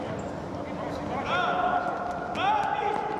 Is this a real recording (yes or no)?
yes